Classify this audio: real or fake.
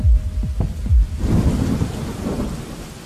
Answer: real